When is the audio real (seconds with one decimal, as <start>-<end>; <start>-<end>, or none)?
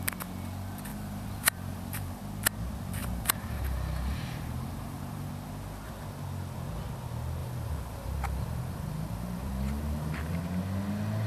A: 0.0-0.9; 2.2-3.0; 5.3-7.4; 10.4-11.3